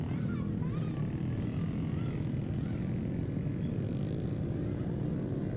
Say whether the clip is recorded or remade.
recorded